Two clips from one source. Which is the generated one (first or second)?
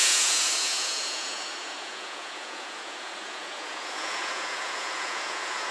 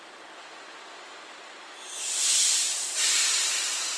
first